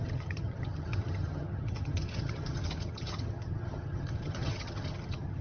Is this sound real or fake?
fake